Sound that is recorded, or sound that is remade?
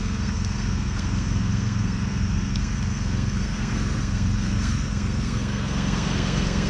remade